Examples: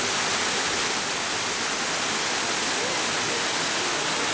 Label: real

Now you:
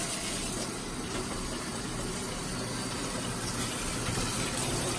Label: fake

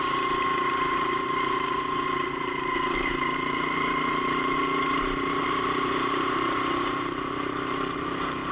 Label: fake